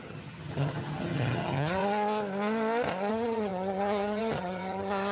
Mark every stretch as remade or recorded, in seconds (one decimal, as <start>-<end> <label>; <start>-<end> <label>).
0.0-1.8 remade; 1.8-3.1 recorded; 3.1-5.1 remade